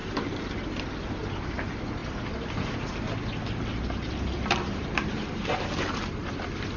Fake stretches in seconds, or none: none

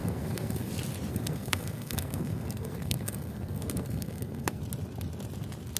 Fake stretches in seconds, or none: 0.0-0.7 (codec, SNAC); 1.1-4.6